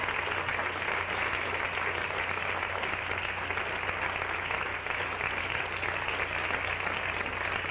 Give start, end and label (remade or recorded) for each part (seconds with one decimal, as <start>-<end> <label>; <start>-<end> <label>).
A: 0.0-7.7 recorded

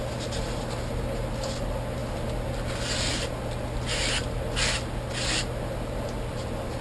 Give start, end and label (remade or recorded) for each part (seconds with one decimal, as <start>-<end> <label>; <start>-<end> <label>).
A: 0.0-6.8 recorded

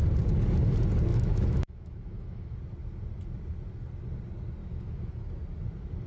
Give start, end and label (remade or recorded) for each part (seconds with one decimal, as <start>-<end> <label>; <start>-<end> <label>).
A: 0.0-1.1 recorded; 1.1-2.6 remade; 2.6-4.6 recorded; 4.6-5.1 remade; 5.1-6.1 recorded

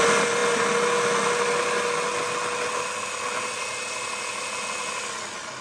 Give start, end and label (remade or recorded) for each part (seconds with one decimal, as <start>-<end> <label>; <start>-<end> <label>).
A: 0.0-5.6 recorded

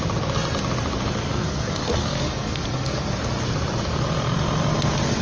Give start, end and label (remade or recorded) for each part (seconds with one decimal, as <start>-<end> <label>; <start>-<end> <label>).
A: 0.0-1.3 recorded; 1.3-3.2 remade; 3.2-5.2 recorded

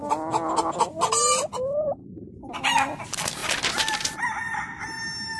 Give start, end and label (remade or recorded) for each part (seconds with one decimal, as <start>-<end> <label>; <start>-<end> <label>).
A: 0.0-2.0 recorded; 2.0-2.5 remade; 2.5-5.4 recorded